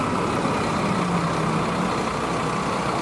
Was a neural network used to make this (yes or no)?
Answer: no